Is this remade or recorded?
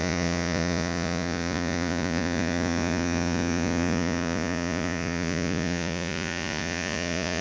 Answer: remade